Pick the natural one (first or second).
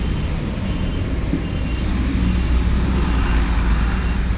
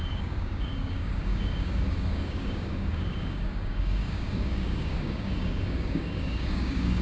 first